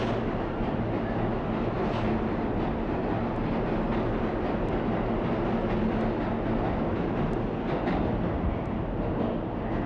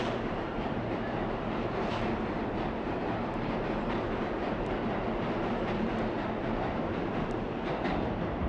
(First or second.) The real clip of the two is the first